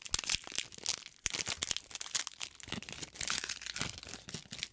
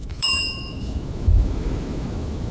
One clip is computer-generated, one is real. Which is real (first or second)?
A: first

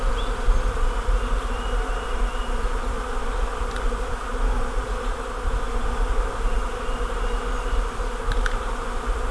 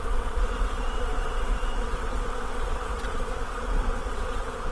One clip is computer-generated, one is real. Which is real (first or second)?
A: first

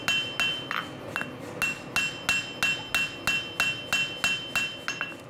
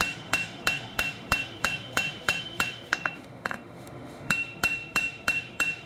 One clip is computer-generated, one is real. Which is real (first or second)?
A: first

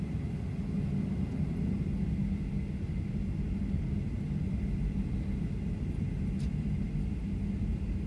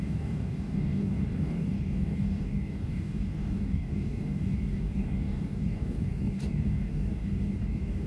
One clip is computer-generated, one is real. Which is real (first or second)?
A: first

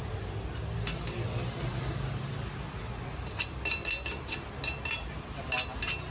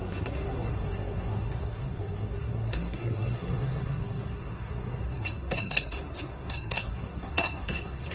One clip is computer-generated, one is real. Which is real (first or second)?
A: first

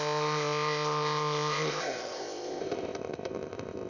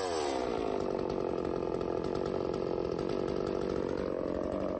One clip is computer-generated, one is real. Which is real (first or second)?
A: second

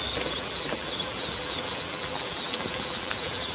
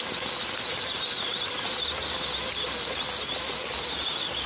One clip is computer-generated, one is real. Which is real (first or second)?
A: second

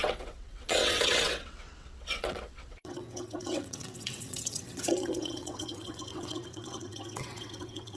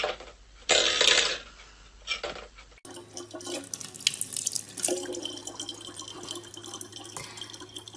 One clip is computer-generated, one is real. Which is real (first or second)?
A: second